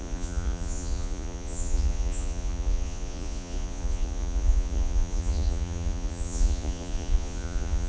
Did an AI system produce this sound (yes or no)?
yes